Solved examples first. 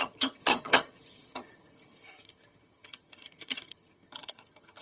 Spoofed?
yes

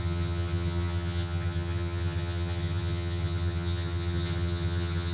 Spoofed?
yes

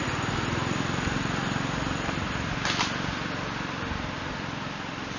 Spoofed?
no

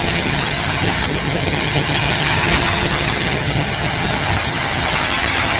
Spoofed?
yes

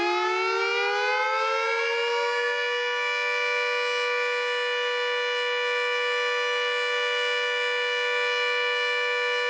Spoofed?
no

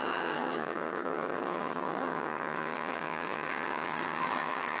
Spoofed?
yes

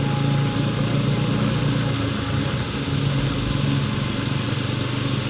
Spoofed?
no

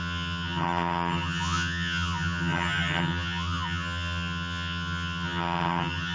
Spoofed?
yes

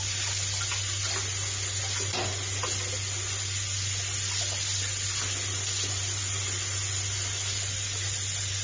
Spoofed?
no